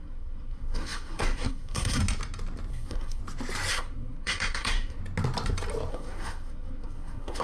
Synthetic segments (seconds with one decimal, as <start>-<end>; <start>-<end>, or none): 0.0-2.0; 2.7-3.2; 3.7-5.0; 5.9-7.4